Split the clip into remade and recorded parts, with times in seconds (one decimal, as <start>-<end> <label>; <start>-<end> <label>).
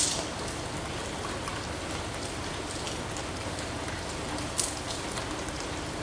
0.0-6.0 recorded